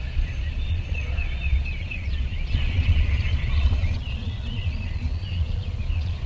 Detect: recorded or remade remade